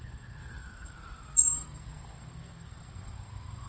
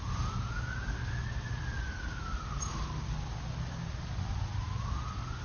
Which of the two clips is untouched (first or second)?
second